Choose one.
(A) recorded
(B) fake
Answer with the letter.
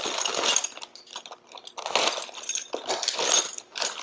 A